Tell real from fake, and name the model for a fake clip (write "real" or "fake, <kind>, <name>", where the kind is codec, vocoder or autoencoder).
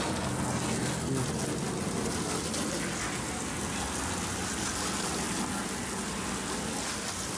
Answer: real